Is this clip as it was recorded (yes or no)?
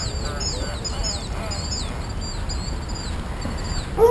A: yes